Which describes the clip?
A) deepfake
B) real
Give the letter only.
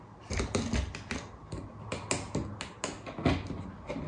B